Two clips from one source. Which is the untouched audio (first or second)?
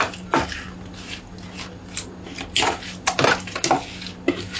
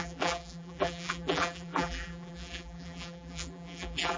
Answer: first